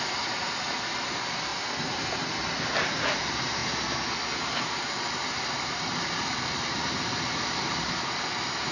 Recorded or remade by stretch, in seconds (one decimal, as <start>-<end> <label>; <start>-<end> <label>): 0.0-3.6 remade; 3.6-4.6 recorded; 4.6-8.7 remade